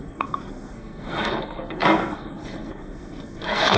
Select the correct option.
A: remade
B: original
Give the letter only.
A